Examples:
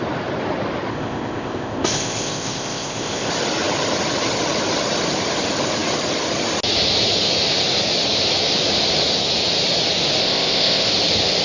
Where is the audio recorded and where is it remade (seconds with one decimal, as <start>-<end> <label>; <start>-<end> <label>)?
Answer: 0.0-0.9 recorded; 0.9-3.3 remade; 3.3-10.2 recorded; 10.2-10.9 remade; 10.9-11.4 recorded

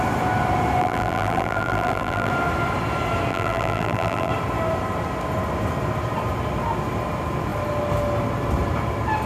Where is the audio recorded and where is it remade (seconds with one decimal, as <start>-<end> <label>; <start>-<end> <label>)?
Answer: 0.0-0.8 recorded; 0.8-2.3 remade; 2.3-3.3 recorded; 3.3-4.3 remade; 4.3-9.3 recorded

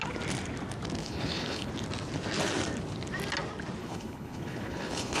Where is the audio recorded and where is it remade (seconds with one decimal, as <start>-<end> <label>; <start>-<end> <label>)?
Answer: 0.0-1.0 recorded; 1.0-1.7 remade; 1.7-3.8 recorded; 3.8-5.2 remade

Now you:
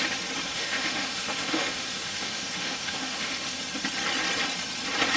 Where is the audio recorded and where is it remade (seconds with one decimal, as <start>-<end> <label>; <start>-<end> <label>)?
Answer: 0.0-0.5 recorded; 0.5-3.6 remade; 3.6-5.2 recorded

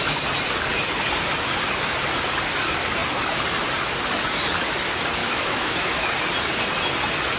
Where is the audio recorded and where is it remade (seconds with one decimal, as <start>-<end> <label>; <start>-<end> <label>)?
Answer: 0.0-5.2 recorded; 5.2-6.1 remade; 6.1-7.4 recorded